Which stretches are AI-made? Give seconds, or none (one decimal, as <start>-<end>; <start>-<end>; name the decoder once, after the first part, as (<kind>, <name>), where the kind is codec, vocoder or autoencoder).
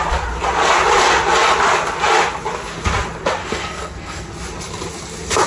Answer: 3.4-4.3 (codec, SNAC)